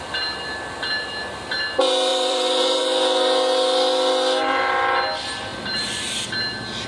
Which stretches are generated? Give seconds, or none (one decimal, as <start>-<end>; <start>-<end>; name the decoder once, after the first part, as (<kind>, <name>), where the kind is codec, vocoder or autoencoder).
2.1-2.8 (vocoder, BigVGAN v2)